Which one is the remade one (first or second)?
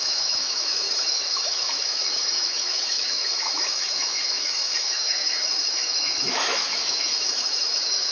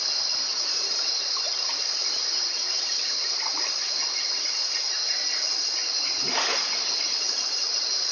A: first